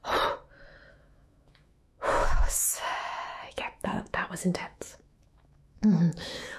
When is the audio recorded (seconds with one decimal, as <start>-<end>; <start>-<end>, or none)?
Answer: 0.0-0.9

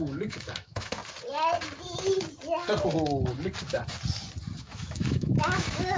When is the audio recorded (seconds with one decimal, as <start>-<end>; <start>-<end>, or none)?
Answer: 1.0-4.6

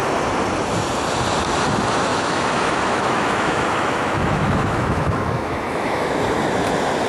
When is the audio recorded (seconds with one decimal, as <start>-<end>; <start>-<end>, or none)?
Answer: 0.0-2.1; 6.2-7.1

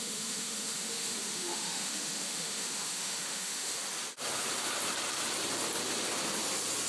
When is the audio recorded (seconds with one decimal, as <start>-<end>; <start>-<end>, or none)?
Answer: 3.8-6.9

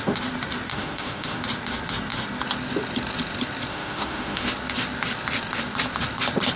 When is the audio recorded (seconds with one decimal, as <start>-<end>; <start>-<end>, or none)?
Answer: 0.0-0.7; 1.4-3.7; 4.5-6.6

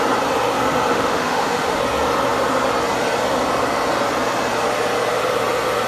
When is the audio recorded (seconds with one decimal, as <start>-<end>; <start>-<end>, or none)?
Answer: 0.0-0.9; 1.8-5.9

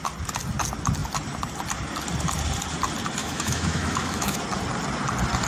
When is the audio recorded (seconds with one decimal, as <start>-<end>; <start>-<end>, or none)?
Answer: 0.0-3.2; 4.4-5.5

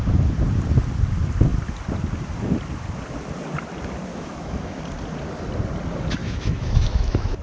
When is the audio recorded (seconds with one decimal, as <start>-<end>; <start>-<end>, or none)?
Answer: 0.0-4.1; 4.8-6.2